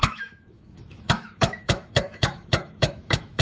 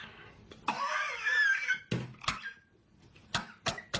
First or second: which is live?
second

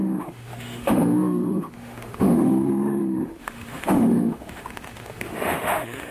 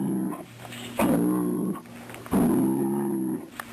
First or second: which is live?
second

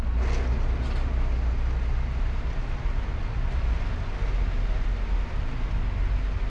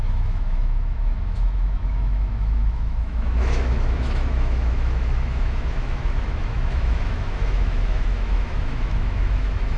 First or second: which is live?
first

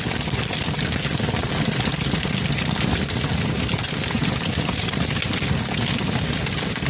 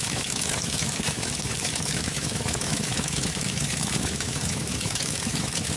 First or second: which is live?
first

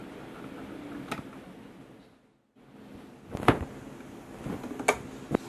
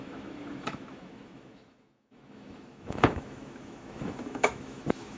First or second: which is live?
first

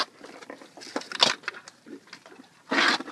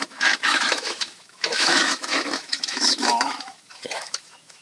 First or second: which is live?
first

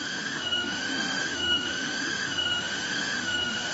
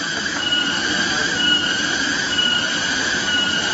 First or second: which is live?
second